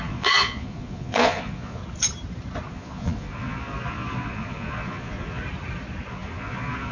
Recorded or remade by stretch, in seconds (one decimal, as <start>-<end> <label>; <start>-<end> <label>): 0.0-1.8 remade; 1.8-2.7 recorded; 2.7-5.4 remade; 5.4-6.1 recorded; 6.1-6.9 remade